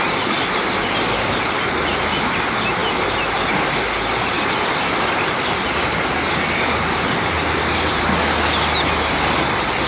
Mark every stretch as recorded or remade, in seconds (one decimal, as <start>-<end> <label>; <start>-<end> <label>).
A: 0.0-9.9 recorded